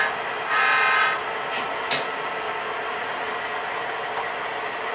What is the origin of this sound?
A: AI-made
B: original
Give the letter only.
B